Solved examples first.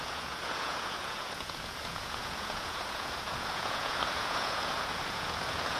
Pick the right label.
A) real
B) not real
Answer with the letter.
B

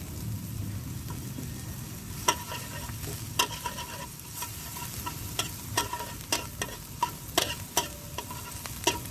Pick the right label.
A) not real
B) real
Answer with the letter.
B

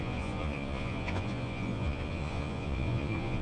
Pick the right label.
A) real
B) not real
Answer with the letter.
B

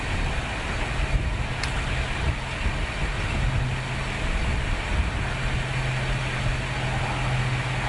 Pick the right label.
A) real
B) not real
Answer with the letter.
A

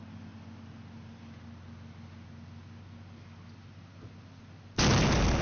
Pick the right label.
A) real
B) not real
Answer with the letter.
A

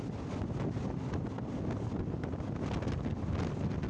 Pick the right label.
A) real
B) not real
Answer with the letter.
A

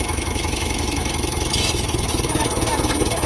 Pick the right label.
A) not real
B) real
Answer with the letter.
A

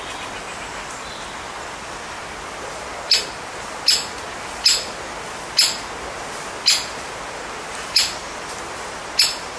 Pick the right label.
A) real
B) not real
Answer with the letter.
A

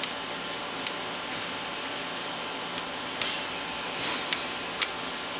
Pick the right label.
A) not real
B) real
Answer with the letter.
B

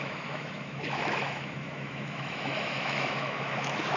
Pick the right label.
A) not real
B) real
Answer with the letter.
A